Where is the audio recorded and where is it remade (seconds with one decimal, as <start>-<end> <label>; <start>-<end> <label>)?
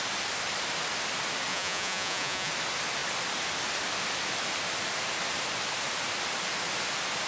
0.0-1.5 recorded; 1.5-2.5 remade; 2.5-7.3 recorded